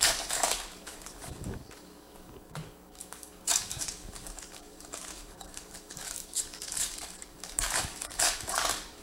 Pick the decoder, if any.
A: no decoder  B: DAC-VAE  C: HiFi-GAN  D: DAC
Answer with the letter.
D